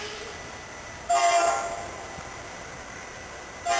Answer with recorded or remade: recorded